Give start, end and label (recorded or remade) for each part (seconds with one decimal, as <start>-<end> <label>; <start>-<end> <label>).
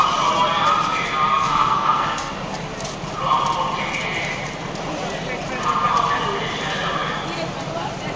0.0-1.3 recorded; 1.3-2.3 remade; 2.3-8.2 recorded